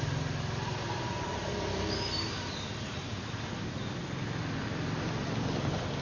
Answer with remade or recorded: recorded